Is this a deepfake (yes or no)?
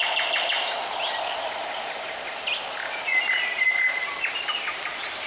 no